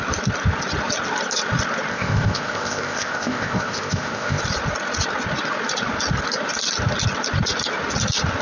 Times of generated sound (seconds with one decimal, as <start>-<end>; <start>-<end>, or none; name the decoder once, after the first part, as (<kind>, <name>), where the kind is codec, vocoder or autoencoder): 1.9-4.4 (codec, ZipCodec)